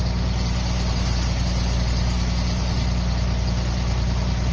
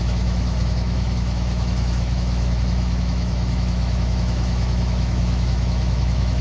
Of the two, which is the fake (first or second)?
second